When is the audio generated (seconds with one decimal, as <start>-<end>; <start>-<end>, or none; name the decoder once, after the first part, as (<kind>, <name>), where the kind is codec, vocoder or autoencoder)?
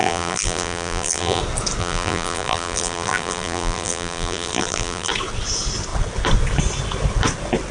0.0-1.4 (vocoder, BigVGAN v2); 1.8-5.1